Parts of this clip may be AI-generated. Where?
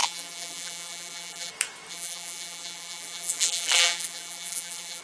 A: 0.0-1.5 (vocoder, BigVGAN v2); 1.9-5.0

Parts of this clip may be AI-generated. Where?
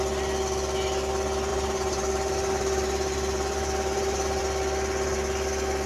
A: 1.5-4.4 (vocoder, BigVGAN v2)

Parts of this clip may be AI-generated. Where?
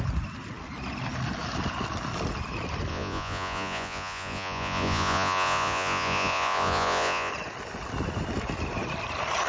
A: 2.9-7.3 (vocoder, Vocos)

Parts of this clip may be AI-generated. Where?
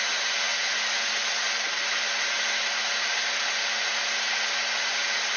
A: none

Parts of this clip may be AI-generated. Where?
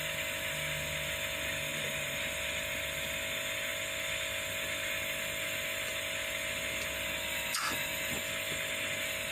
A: 1.7-2.2 (vocoder, BigVGAN v2)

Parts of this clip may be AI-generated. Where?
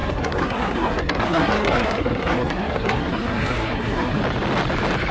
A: 0.0-4.2 (codec, SNAC)